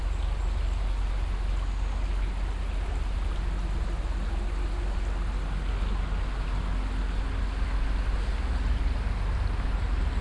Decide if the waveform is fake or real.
real